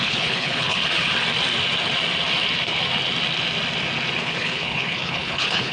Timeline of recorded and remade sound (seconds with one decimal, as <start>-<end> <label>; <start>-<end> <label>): 0.0-0.8 remade; 0.8-4.2 recorded; 4.2-5.7 remade